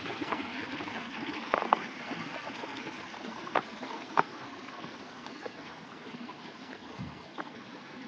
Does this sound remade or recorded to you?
remade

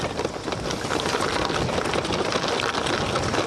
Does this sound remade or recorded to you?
recorded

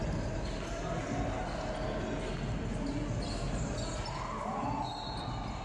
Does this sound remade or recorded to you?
recorded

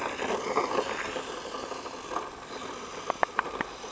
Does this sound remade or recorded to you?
recorded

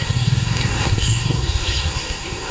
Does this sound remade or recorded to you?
remade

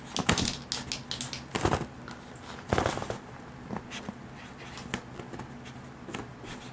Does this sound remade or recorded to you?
recorded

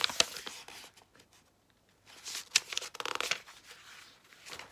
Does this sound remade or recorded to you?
recorded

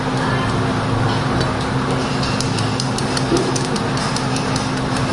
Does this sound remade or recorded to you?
recorded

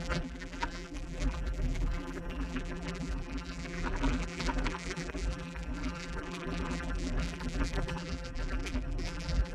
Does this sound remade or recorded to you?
remade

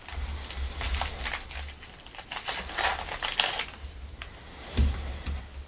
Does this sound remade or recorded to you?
recorded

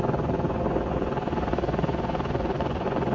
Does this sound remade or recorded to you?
remade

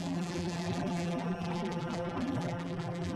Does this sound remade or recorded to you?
remade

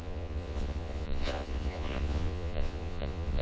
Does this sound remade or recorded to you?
remade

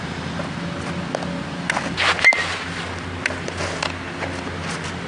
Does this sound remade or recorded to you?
recorded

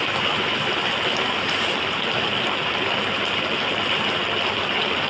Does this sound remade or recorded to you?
recorded